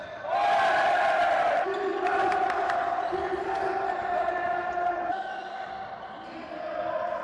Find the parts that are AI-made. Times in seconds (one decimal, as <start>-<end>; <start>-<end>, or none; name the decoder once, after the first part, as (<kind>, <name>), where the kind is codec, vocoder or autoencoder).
none